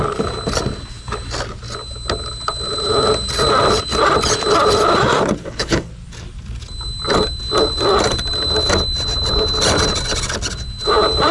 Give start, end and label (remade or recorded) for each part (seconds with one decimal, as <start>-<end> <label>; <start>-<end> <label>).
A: 0.0-5.4 recorded; 5.4-5.9 remade; 5.9-11.3 recorded